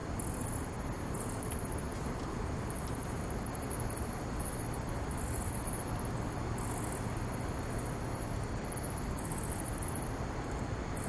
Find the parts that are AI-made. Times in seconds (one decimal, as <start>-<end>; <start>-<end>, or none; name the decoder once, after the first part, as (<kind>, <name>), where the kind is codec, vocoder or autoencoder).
none